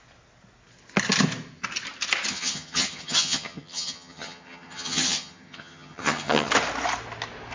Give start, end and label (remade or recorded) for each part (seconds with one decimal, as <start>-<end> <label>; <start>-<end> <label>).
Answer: 0.0-2.3 recorded; 2.3-6.5 remade; 6.5-7.5 recorded